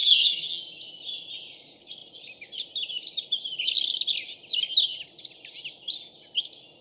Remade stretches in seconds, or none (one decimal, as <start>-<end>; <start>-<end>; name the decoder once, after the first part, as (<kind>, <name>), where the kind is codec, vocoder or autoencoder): 0.0-0.6 (vocoder, HiFi-GAN)